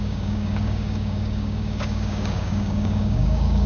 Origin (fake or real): fake